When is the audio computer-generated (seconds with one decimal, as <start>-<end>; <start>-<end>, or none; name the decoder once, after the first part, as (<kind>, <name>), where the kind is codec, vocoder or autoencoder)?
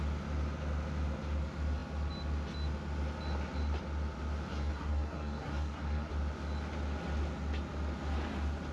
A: 4.5-6.1 (codec, SNAC)